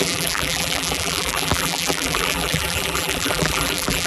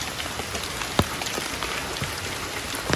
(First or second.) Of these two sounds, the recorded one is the second